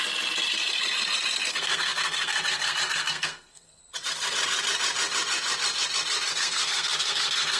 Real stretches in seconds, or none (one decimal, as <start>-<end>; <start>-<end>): 0.0-1.5; 3.8-6.3